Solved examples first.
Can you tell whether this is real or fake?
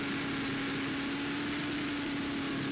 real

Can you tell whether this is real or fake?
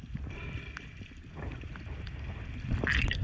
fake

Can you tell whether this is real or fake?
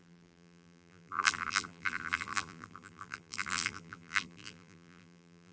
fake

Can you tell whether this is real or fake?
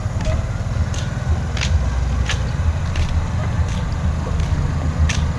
real